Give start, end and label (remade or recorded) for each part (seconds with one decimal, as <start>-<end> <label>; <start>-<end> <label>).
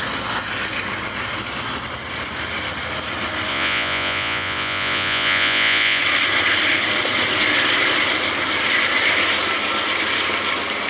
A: 0.0-3.5 recorded; 3.5-6.0 remade; 6.0-10.9 recorded